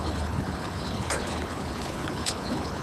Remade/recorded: remade